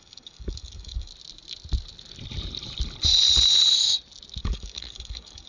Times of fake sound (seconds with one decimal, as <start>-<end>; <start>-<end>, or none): 0.0-1.1; 4.4-5.5